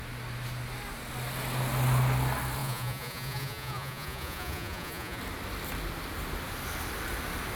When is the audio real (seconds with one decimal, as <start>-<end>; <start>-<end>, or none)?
0.0-2.6; 5.2-7.6